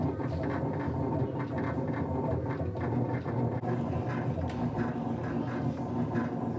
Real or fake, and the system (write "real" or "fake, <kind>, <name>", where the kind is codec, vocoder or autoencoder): real